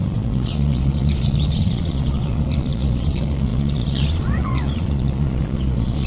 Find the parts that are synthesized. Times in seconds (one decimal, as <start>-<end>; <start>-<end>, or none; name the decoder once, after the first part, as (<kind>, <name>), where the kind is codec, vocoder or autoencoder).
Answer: 0.0-6.1 (vocoder, Vocos)